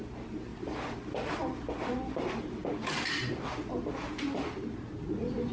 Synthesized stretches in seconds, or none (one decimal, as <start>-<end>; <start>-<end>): 0.5-1.1; 2.6-3.3